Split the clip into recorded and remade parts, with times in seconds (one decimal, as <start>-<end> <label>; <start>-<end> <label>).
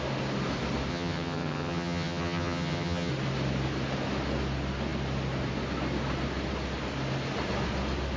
0.0-0.9 recorded; 0.9-3.1 remade; 3.1-8.2 recorded